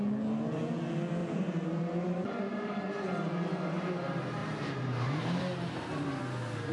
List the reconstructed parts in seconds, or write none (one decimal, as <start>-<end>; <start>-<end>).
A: 1.2-2.8; 4.4-5.4